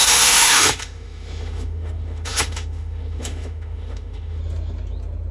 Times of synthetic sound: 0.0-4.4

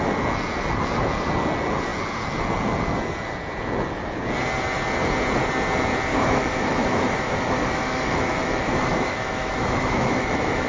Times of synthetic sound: 6.1-10.7